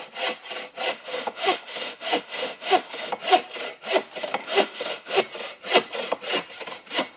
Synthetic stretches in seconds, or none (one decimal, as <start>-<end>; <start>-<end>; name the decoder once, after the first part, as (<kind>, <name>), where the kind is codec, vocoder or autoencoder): 0.9-3.1 (autoencoder, DAC-VAE); 4.4-5.2